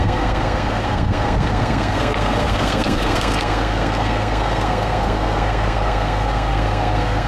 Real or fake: fake